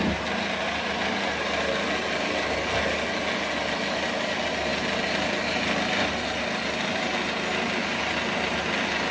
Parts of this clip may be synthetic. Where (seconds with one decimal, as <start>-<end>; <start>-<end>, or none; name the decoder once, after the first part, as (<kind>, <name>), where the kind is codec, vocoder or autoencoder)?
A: none